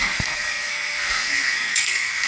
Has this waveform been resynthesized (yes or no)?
yes